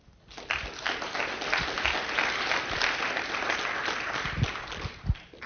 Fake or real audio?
real